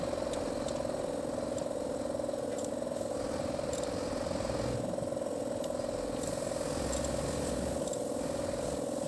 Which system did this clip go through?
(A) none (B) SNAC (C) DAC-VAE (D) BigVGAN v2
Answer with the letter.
A